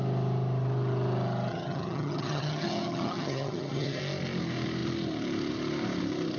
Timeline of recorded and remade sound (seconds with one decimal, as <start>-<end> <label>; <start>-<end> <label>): 0.0-1.5 recorded; 1.5-4.0 remade; 4.0-6.4 recorded